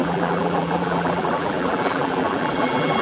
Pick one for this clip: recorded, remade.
remade